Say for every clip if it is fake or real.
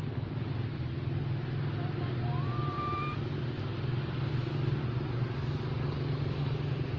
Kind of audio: real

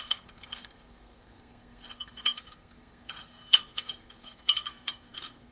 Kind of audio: fake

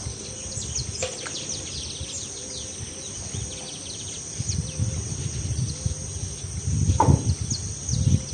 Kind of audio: real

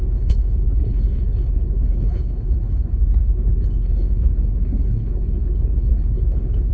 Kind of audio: fake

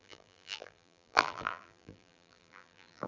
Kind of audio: fake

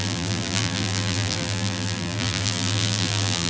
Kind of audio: fake